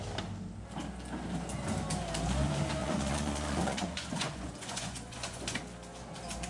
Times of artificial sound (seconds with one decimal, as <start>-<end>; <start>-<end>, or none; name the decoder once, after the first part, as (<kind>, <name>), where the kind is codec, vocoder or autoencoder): 2.8-5.6 (vocoder, Vocos)